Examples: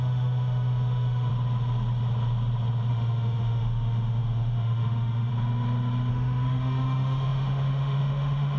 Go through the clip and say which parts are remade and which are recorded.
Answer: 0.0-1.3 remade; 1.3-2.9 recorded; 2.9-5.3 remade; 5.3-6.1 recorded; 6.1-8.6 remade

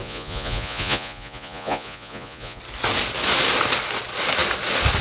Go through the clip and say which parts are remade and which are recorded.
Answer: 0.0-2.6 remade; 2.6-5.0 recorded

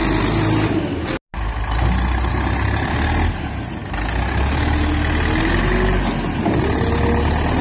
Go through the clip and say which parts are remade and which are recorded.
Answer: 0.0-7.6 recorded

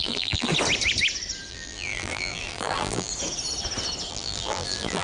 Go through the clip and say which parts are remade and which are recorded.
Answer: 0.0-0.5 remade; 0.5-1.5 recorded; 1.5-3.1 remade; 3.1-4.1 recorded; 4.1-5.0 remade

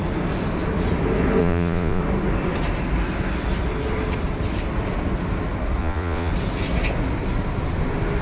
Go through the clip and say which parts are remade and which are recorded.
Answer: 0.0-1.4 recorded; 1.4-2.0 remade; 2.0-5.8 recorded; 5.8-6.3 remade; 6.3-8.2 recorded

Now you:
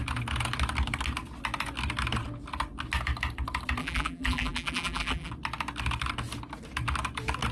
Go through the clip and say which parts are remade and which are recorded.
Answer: 0.0-3.8 recorded; 3.8-5.3 remade; 5.3-7.5 recorded